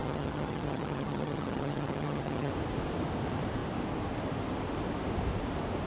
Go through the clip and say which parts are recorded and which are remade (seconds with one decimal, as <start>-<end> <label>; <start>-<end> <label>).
0.0-2.5 remade; 2.5-5.9 recorded